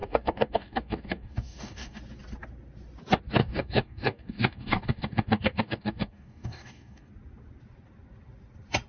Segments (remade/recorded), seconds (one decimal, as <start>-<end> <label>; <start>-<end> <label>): 0.0-2.0 remade; 2.0-3.4 recorded; 3.4-7.1 remade; 7.1-8.9 recorded